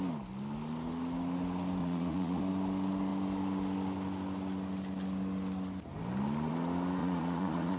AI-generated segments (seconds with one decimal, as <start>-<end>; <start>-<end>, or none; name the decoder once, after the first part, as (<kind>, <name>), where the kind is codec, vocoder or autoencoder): 1.8-2.4 (vocoder, Vocos); 7.0-7.8